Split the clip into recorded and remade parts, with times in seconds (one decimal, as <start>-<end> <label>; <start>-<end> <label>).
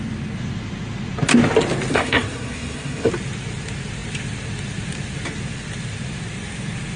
0.0-1.9 recorded; 1.9-3.1 remade; 3.1-7.0 recorded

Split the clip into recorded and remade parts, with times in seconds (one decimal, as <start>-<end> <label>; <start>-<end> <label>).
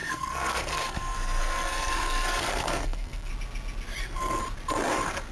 0.0-3.3 remade; 3.3-4.0 recorded; 4.0-4.4 remade; 4.4-5.3 recorded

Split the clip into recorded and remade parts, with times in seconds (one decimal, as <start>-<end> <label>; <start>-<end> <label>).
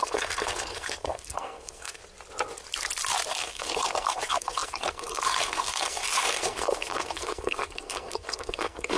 0.0-2.0 remade; 2.0-3.3 recorded; 3.3-9.0 remade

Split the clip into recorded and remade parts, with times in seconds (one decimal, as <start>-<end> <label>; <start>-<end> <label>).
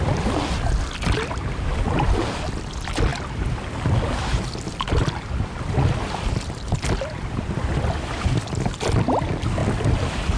0.0-10.4 recorded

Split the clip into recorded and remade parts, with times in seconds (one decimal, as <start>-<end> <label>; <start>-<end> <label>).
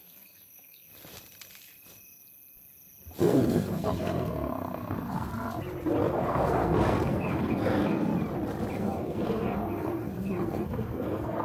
0.0-0.9 remade; 0.9-3.2 recorded; 3.2-5.3 remade; 5.3-6.1 recorded; 6.1-8.1 remade; 8.1-8.7 recorded; 8.7-11.4 remade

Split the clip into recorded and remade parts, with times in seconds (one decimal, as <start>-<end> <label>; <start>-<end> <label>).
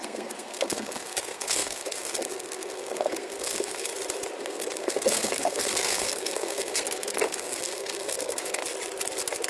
0.0-3.9 remade; 3.9-4.4 recorded; 4.4-8.6 remade; 8.6-9.5 recorded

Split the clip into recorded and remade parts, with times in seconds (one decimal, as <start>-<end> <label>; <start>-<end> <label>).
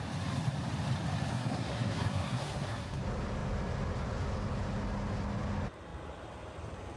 0.0-1.3 recorded; 1.3-3.0 remade; 3.0-7.0 recorded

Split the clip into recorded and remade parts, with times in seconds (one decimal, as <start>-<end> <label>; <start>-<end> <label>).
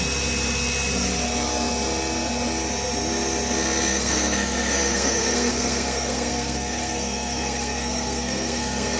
0.0-3.9 recorded; 3.9-9.0 remade